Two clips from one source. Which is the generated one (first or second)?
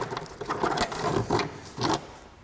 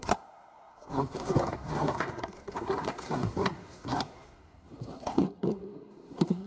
second